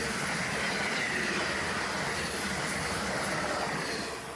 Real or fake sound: real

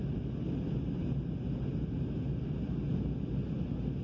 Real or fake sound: real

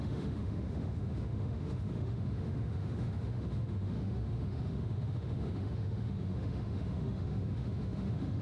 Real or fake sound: fake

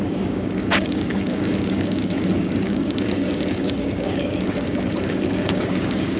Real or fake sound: fake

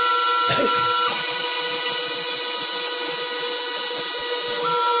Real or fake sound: real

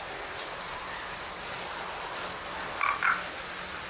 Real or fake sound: real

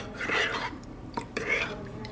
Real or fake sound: fake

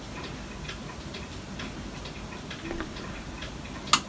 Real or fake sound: real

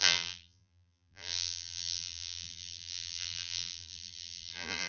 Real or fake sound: fake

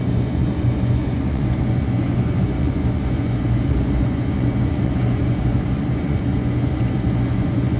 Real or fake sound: fake